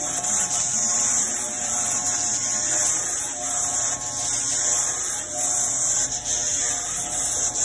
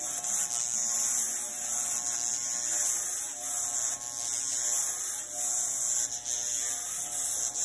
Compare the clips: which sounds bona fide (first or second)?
second